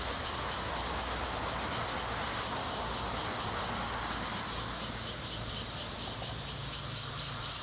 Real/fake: real